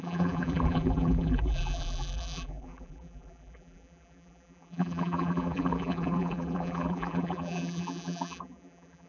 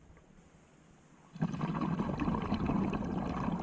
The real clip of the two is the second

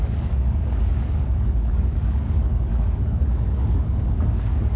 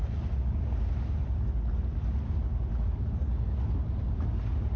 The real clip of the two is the second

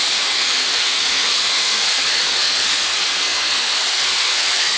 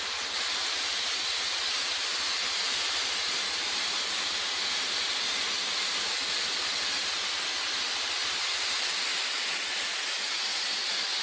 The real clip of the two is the second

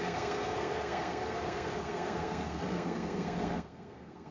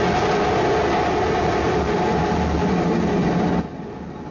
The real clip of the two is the second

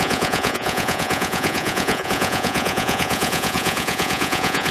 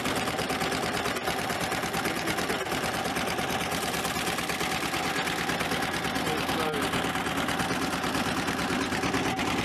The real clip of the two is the second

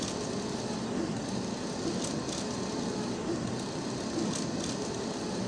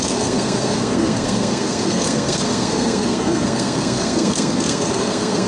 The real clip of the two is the first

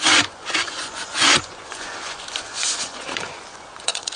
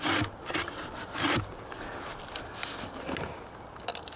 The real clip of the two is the second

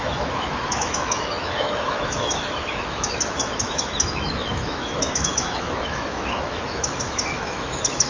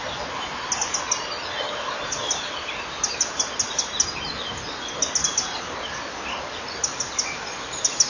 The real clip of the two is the second